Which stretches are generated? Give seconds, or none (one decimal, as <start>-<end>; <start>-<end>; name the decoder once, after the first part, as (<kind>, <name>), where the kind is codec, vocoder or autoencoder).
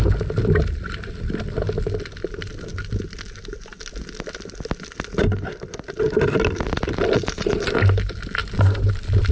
none